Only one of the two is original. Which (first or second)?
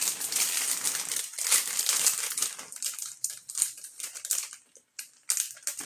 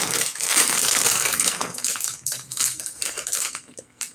first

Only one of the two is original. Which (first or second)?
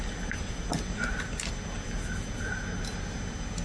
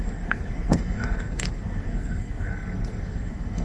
first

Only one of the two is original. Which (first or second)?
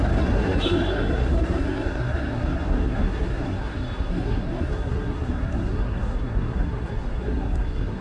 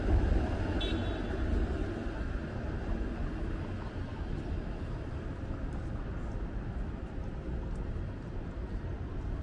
second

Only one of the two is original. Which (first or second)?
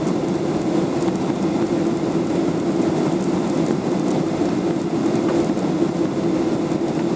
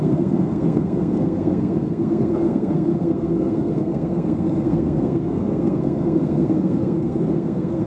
first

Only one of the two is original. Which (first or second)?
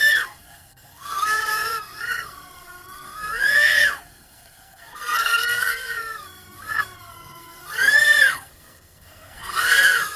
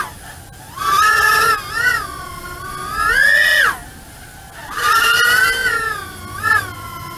second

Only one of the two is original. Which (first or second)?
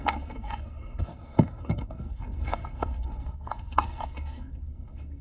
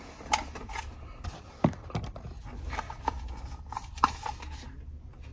second